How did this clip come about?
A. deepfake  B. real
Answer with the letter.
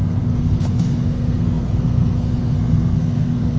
A